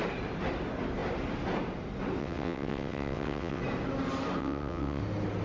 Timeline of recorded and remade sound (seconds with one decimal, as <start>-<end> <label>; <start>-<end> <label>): 0.0-2.2 recorded; 2.2-3.6 remade; 3.6-4.4 recorded; 4.4-5.0 remade; 5.0-5.4 recorded